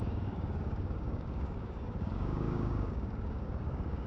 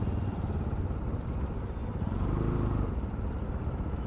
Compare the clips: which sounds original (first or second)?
second